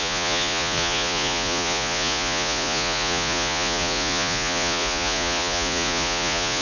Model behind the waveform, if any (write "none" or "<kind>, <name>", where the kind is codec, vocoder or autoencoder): vocoder, Vocos